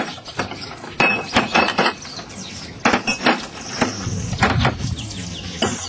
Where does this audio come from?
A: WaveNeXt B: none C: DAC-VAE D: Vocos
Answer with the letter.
B